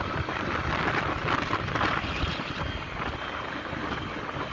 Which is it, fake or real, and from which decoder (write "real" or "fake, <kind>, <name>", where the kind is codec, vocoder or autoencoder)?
real